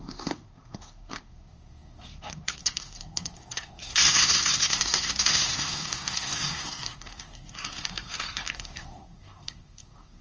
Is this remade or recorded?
remade